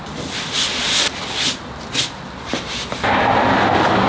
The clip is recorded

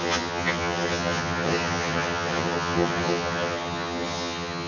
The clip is remade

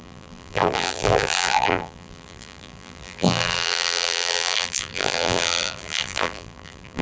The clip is remade